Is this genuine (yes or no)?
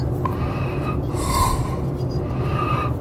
yes